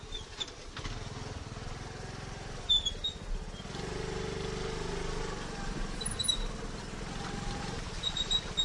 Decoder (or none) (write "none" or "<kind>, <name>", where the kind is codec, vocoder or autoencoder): none